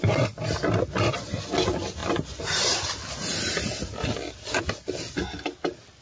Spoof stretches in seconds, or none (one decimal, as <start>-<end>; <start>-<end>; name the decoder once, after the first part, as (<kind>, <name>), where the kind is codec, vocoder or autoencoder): none